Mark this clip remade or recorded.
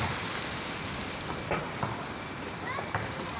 recorded